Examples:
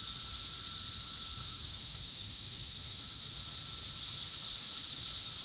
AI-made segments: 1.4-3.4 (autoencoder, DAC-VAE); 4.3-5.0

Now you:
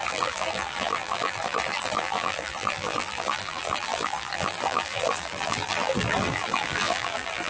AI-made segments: 0.0-7.5 (vocoder, BigVGAN v2)

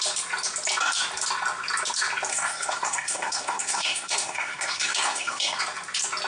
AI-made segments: 2.3-5.6 (codec, SNAC)

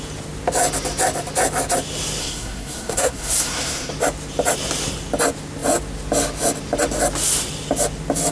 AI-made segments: 2.2-3.9 (codec, SNAC)

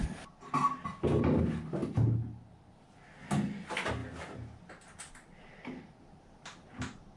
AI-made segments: none

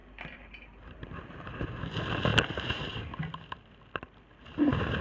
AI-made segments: 0.0-1.8 (vocoder, BigVGAN v2); 2.3-4.0

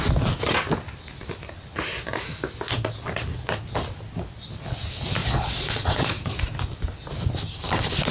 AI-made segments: 5.2-6.3 (vocoder, Vocos)

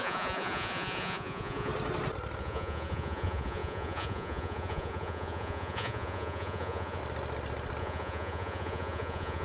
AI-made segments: 0.0-1.7 (vocoder, Vocos); 2.4-7.0; 7.8-9.4